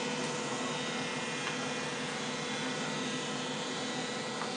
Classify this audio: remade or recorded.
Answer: recorded